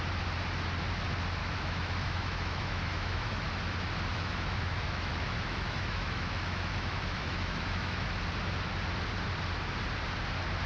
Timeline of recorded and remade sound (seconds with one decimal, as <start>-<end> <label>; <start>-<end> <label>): 0.0-1.4 recorded; 1.4-3.5 remade; 3.5-4.1 recorded; 4.1-8.1 remade; 8.1-10.7 recorded